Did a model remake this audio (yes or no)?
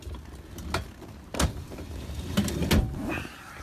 no